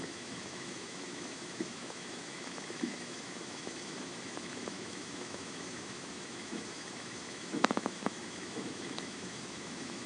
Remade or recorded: remade